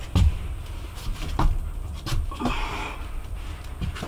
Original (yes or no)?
yes